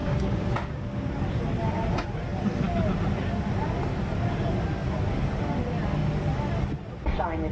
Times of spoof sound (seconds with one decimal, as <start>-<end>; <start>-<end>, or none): 0.0-1.1